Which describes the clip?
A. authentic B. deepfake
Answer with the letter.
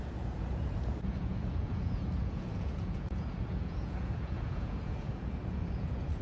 B